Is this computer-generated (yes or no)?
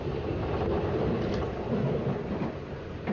no